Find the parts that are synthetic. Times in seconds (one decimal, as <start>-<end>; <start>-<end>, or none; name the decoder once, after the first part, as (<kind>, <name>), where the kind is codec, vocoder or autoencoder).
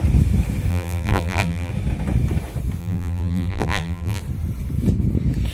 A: 0.7-1.7 (vocoder, BigVGAN v2); 2.8-4.2